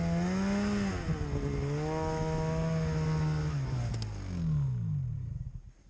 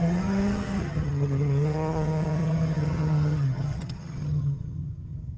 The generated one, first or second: second